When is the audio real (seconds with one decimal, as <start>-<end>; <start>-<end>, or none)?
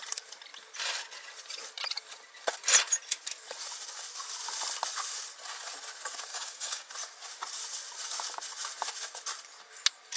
0.0-6.3; 6.9-10.2